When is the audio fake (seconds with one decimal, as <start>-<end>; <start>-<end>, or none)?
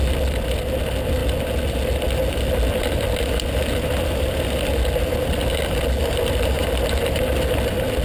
none